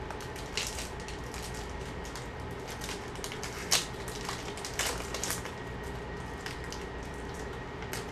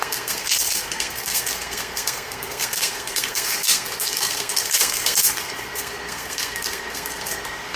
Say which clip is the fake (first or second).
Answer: second